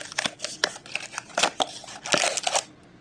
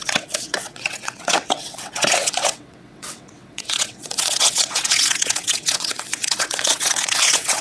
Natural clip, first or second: first